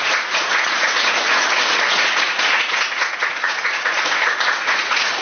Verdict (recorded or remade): remade